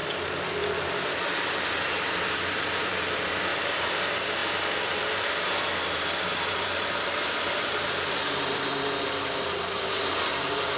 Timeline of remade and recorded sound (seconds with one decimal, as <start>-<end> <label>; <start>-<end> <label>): 0.0-0.5 recorded; 0.5-3.5 remade; 3.5-4.0 recorded; 4.0-10.8 remade